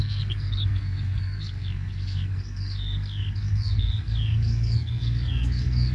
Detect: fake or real fake